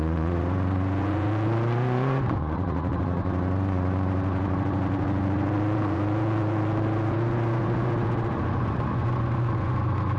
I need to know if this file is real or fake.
fake